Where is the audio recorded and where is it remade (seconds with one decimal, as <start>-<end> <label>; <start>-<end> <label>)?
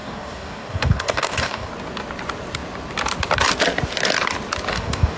0.0-1.7 remade; 1.7-4.7 recorded; 4.7-5.2 remade